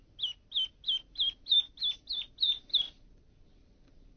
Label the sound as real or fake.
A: real